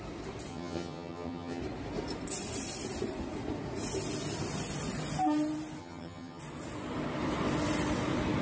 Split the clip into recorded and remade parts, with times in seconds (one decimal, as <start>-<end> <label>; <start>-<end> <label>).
0.0-0.5 recorded; 0.5-1.6 remade; 1.6-5.8 recorded; 5.8-6.4 remade; 6.4-8.4 recorded